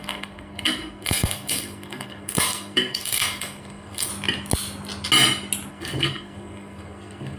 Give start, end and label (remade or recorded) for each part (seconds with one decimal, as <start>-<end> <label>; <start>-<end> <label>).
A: 0.0-4.1 remade; 4.1-5.7 recorded; 5.7-7.4 remade